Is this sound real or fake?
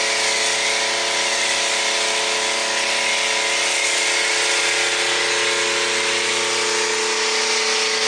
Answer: real